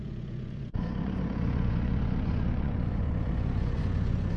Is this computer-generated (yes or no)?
yes